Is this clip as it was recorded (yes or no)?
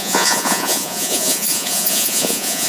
no